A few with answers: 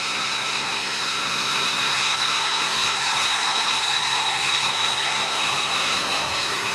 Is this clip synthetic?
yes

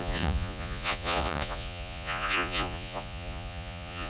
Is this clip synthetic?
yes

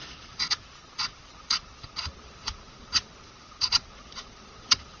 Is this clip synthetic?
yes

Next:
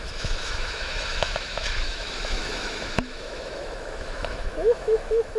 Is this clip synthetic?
yes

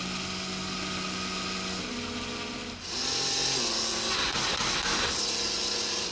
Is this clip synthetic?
no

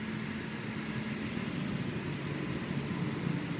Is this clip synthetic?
no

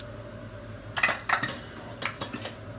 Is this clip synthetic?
no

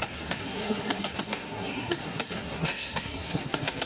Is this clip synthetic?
yes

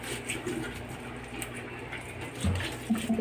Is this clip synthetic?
no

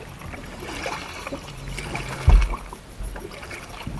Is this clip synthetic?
no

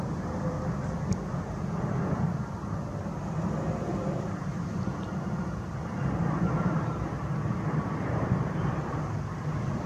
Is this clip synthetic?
yes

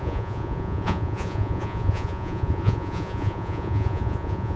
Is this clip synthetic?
yes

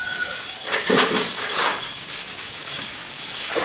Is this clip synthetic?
yes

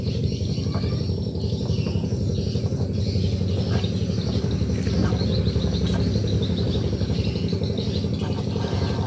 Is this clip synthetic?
no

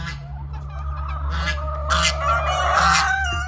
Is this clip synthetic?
no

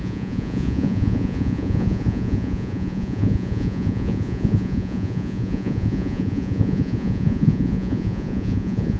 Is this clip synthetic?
yes